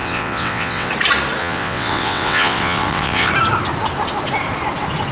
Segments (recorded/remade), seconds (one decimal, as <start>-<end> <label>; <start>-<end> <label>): 0.0-0.9 remade; 0.9-1.4 recorded; 1.4-3.3 remade; 3.3-5.1 recorded